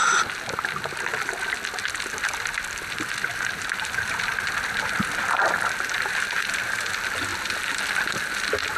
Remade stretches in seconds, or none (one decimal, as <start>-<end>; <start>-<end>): 0.0-1.1; 3.3-8.8